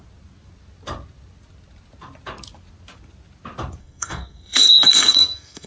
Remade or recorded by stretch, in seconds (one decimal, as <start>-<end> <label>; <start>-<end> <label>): 0.0-3.8 recorded; 3.8-5.7 remade

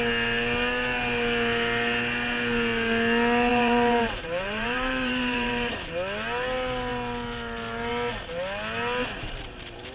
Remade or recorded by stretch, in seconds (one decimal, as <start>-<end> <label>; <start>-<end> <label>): 0.0-3.5 recorded; 3.5-5.9 remade; 5.9-9.9 recorded

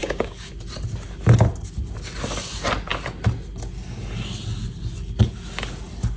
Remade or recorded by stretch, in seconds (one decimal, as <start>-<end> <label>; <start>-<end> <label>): 0.0-0.5 remade; 0.5-6.2 recorded